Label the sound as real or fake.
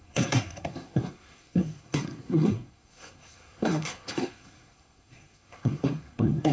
fake